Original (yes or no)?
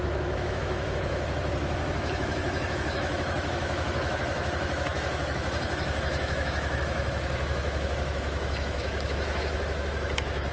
no